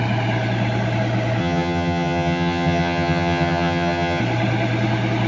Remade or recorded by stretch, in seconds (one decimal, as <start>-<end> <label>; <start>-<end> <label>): 0.0-1.4 recorded; 1.4-4.2 remade; 4.2-5.3 recorded